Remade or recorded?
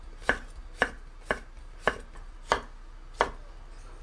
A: recorded